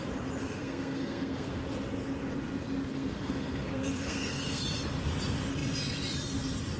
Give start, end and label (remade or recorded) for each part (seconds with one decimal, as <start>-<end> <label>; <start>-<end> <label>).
0.0-0.4 recorded; 0.4-1.6 remade; 1.6-2.9 recorded; 2.9-4.6 remade; 4.6-6.8 recorded